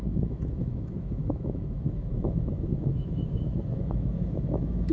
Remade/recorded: remade